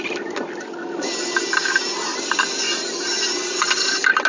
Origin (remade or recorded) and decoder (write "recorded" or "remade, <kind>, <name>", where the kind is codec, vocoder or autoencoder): recorded